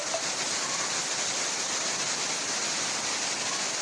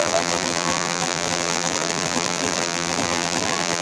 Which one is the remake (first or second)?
second